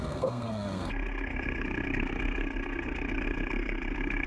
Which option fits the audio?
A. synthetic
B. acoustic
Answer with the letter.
A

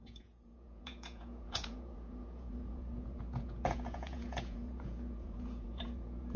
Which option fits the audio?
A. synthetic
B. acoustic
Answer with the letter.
A